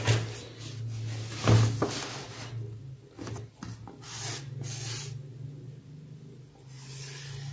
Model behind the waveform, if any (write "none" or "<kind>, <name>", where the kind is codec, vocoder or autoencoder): none